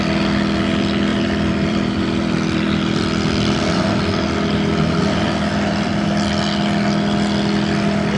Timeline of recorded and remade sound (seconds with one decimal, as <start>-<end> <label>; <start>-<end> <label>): 0.0-1.1 recorded; 1.1-5.9 remade; 5.9-8.2 recorded